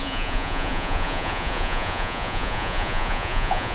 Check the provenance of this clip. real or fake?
fake